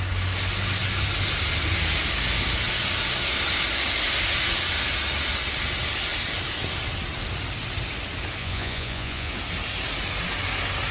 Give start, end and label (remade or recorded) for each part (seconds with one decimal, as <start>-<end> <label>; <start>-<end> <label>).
0.0-8.4 recorded; 8.4-9.3 remade; 9.3-10.9 recorded